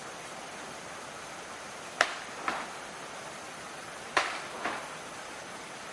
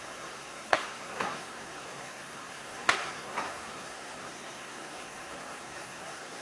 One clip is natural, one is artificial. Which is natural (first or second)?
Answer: first